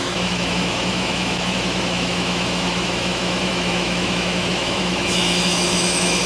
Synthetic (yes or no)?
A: yes